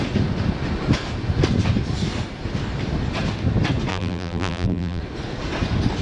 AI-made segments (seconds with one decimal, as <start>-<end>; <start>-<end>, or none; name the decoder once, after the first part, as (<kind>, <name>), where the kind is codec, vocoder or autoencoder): 3.9-5.0 (vocoder, BigVGAN v2)